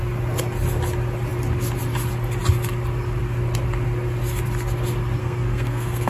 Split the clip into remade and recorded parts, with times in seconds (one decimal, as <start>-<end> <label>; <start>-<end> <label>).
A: 0.0-5.2 recorded; 5.2-6.1 remade